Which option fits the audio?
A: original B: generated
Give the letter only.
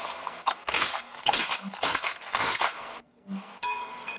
B